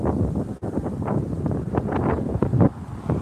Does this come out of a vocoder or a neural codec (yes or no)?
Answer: no